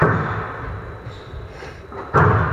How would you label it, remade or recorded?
remade